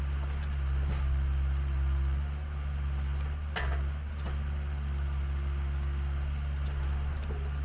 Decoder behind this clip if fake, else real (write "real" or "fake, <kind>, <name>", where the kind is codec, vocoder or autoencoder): real